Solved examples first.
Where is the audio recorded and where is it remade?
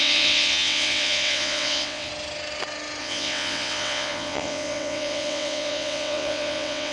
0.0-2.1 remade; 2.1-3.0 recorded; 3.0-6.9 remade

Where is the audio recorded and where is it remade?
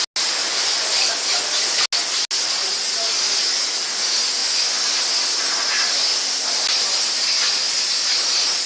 0.0-0.4 recorded; 0.4-1.1 remade; 1.1-4.4 recorded; 4.4-4.9 remade; 4.9-8.7 recorded